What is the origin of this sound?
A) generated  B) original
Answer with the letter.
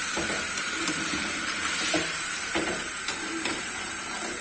A